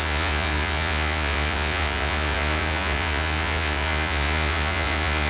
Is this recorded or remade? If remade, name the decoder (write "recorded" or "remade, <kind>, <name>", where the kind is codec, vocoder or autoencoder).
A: remade, vocoder, Vocos